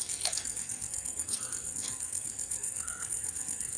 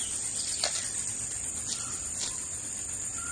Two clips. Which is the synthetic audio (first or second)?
first